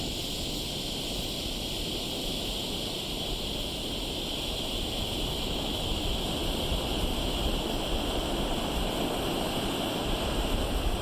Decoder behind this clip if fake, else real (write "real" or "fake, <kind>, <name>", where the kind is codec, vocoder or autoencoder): real